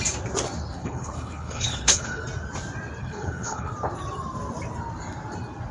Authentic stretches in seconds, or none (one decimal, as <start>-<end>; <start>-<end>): 0.0-0.8; 2.2-3.0; 3.7-5.7